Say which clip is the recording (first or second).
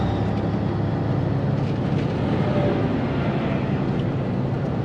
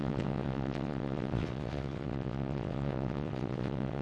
first